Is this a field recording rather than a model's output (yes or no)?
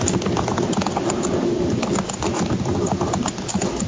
yes